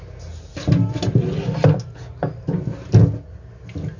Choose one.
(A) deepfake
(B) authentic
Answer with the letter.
B